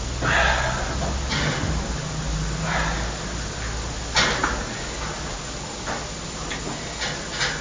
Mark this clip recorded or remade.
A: recorded